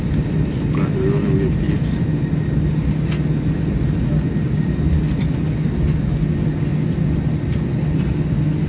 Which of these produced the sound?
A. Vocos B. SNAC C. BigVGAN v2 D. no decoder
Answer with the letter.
D